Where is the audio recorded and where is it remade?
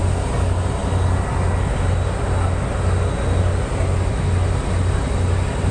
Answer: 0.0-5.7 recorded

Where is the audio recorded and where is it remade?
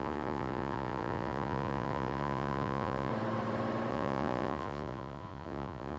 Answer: 0.0-3.1 remade; 3.1-3.9 recorded; 3.9-6.0 remade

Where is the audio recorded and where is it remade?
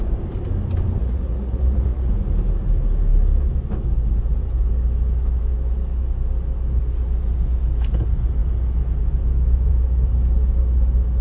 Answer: 0.0-1.0 recorded; 1.0-2.1 remade; 2.1-11.2 recorded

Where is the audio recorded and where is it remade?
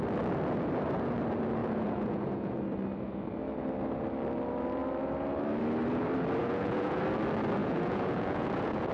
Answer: 0.0-1.6 recorded; 1.6-2.6 remade; 2.6-6.4 recorded; 6.4-7.0 remade; 7.0-7.6 recorded; 7.6-8.9 remade